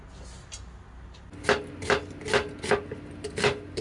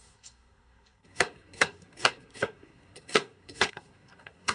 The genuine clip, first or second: first